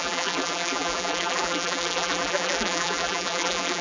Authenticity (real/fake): fake